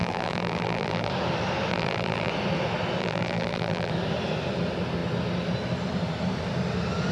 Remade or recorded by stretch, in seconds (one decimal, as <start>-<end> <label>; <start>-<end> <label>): 0.0-1.1 remade; 1.1-1.7 recorded; 1.7-2.3 remade; 2.3-3.0 recorded; 3.0-3.9 remade; 3.9-7.1 recorded